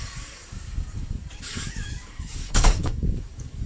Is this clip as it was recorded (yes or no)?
no